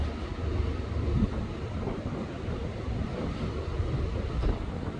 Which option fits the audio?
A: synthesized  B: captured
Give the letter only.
A